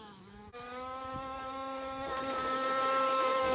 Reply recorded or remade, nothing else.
remade